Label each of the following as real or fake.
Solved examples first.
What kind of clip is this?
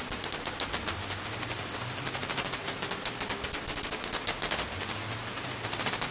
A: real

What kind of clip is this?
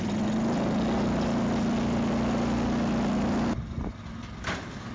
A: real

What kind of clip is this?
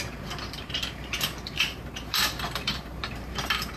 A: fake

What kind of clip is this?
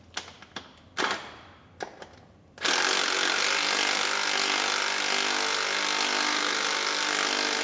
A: real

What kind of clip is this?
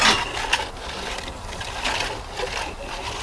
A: real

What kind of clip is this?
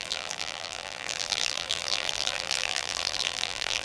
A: fake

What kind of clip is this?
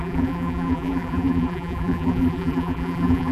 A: fake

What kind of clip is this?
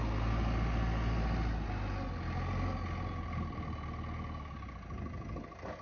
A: real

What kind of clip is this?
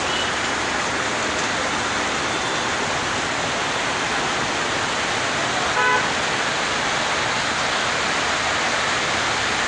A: real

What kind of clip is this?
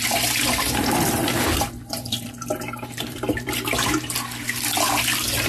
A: fake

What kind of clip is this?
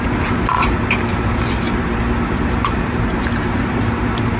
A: fake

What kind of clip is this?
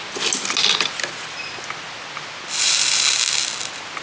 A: real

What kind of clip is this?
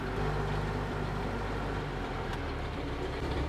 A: fake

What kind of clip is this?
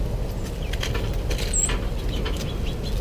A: real